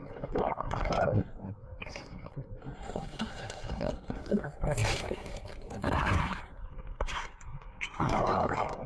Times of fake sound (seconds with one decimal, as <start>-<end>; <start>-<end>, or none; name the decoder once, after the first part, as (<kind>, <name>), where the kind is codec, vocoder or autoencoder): 0.0-8.9 (codec, SNAC)